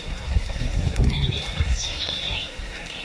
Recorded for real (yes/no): no